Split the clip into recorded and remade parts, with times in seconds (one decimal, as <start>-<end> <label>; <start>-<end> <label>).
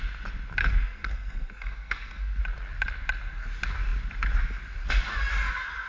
0.0-0.6 recorded; 0.6-2.4 remade; 2.4-5.9 recorded